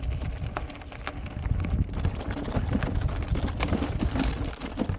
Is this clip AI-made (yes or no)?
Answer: no